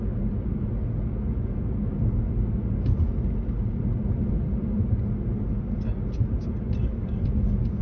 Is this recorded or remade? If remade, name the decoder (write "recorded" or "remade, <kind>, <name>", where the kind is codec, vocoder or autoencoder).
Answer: recorded